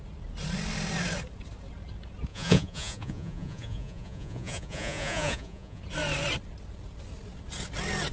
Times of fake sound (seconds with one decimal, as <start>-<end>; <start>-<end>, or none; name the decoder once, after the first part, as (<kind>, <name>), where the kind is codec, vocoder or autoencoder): 2.3-5.8 (vocoder, Vocos)